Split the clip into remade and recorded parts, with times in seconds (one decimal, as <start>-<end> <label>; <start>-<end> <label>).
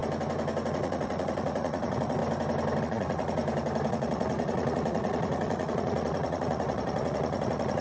0.0-0.7 recorded; 0.7-2.2 remade; 2.2-2.8 recorded; 2.8-3.4 remade; 3.4-3.9 recorded; 3.9-7.8 remade